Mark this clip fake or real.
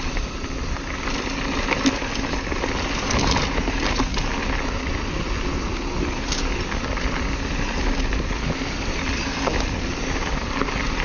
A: real